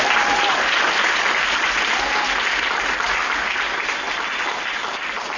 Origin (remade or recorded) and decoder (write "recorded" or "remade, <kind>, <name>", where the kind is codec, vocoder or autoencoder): remade, vocoder, BigVGAN v2